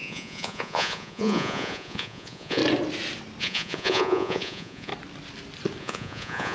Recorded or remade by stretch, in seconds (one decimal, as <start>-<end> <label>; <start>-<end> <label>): 0.0-2.6 remade; 2.6-3.4 recorded; 3.4-4.9 remade; 4.9-5.8 recorded; 5.8-6.5 remade